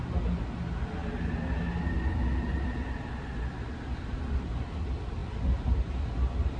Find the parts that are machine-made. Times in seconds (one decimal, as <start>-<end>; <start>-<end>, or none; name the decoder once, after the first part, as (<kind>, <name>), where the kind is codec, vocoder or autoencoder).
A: none

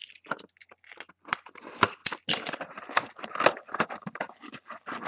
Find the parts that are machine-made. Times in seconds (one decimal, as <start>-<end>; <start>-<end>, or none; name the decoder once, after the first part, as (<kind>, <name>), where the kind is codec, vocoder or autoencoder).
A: none

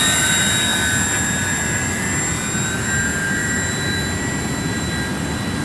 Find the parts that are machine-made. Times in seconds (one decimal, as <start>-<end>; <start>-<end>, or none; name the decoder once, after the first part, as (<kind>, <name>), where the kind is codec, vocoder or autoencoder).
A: 3.4-4.0 (vocoder, BigVGAN v2); 4.7-5.6